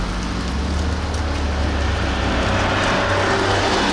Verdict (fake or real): real